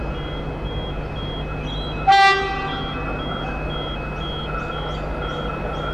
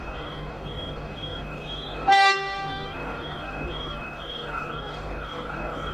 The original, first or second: first